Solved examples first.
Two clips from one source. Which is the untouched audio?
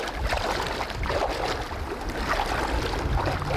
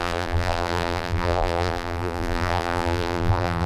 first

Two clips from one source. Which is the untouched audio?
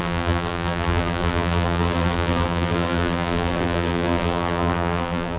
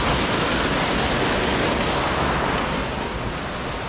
second